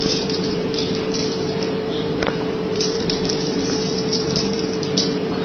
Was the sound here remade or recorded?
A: remade